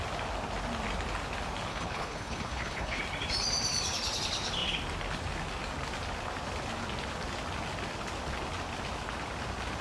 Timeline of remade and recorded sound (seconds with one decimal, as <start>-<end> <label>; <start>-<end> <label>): 0.0-1.7 recorded; 1.7-3.0 remade; 3.0-9.8 recorded